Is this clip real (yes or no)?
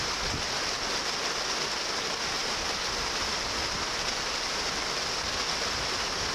yes